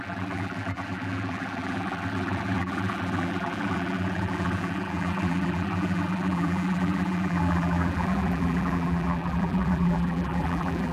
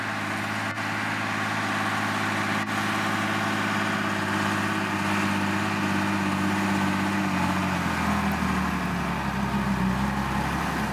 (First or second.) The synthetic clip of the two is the first